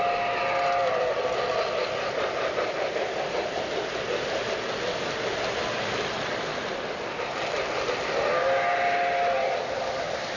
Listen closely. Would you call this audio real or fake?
real